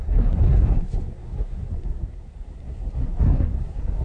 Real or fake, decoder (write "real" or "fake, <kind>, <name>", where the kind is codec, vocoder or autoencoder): fake, codec, SNAC